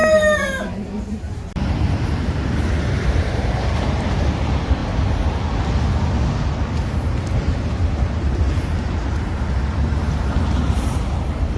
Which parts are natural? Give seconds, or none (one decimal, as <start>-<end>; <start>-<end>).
0.0-1.0; 4.8-6.9; 10.0-10.6